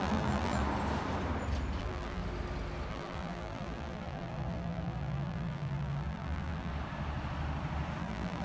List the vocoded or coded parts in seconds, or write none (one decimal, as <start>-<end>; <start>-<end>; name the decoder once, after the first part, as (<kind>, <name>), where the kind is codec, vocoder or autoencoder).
0.0-0.6 (vocoder, BigVGAN v2); 1.8-2.2; 2.9-6.7; 8.0-8.4